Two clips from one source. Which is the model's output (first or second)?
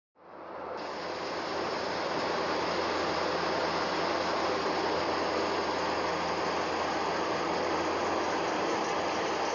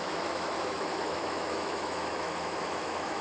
second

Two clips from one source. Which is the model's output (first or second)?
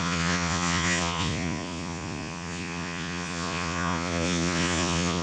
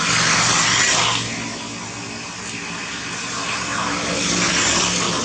first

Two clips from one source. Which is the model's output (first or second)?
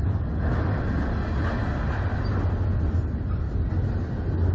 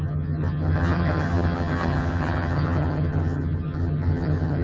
second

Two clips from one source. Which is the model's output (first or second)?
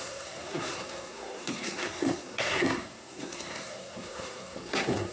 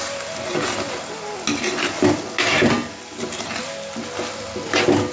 first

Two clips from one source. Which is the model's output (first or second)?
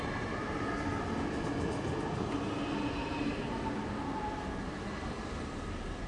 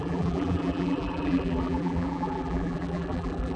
second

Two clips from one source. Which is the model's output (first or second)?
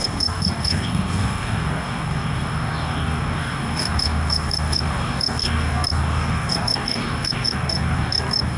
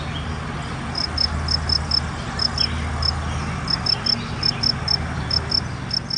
first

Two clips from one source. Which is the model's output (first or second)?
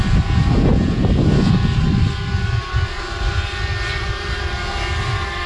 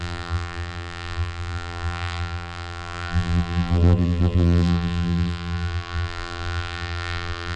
second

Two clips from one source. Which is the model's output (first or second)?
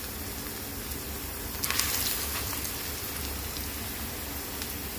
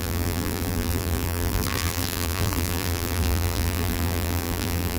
second